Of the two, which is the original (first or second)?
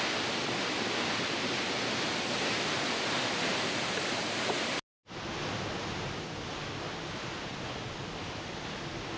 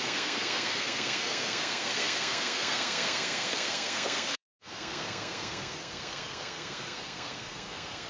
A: first